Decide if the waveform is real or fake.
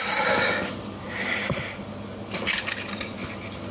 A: real